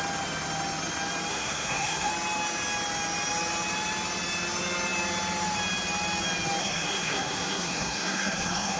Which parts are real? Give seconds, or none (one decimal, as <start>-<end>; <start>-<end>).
0.0-1.3; 2.1-6.6